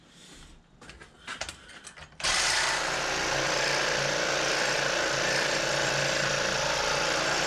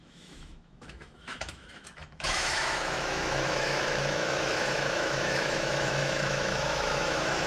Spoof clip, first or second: second